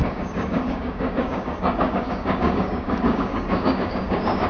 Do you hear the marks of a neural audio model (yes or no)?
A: yes